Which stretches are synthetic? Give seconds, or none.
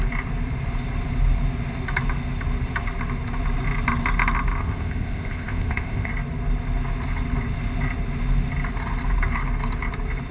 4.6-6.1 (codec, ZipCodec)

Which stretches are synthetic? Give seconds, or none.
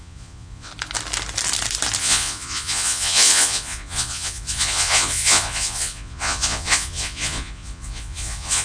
0.0-0.7 (vocoder, Vocos); 2.0-8.6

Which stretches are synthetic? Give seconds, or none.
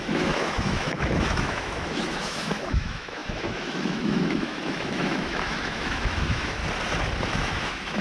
0.0-6.6 (autoencoder, DAC-VAE); 7.3-8.0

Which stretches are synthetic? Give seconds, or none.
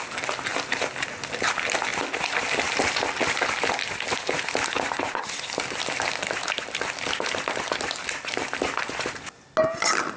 none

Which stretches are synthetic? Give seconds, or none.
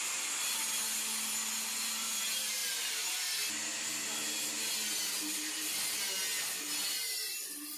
none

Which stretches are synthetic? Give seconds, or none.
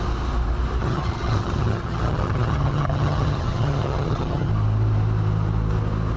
0.8-4.5 (vocoder, HiFi-GAN)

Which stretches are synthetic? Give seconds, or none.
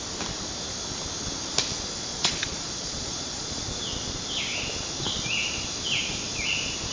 2.1-3.6 (vocoder, Vocos)